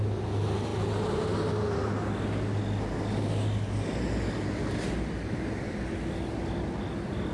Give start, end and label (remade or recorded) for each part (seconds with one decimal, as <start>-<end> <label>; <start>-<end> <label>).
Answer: 0.0-7.3 recorded